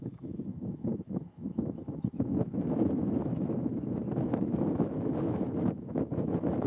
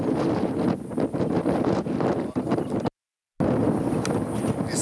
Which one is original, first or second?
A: second